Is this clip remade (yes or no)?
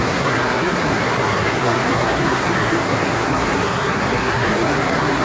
yes